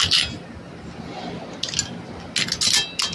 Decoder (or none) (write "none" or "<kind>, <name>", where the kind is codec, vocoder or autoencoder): none